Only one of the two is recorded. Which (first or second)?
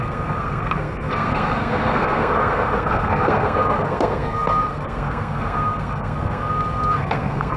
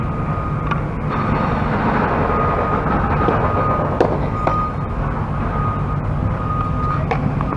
second